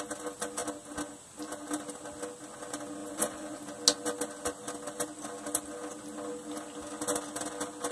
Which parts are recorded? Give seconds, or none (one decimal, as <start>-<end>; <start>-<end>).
0.0-3.0; 3.6-7.9